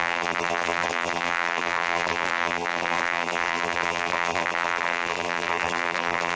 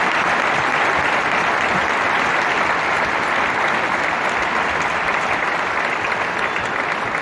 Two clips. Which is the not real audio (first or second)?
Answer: first